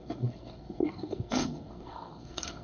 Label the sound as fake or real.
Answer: fake